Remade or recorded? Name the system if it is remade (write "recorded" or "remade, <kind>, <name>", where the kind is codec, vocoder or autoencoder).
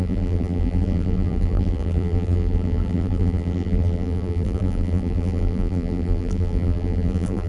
remade, vocoder, BigVGAN v2